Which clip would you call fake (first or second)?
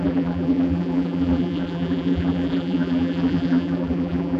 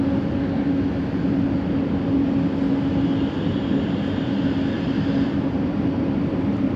first